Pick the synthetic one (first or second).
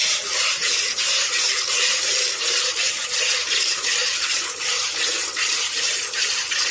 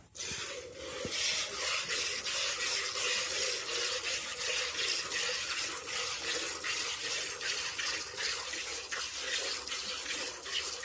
first